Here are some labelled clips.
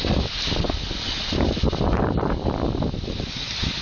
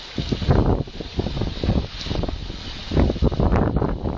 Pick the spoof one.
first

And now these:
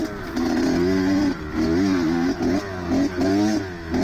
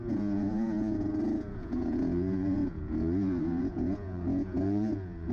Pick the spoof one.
second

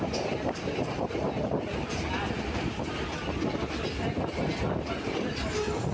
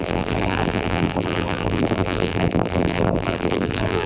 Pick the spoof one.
second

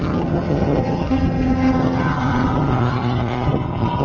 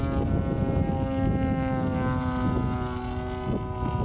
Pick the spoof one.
first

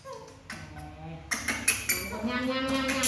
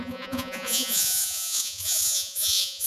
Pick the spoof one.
second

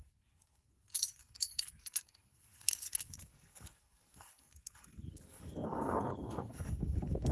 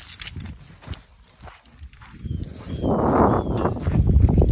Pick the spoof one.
first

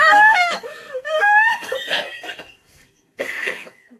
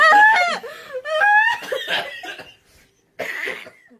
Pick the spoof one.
first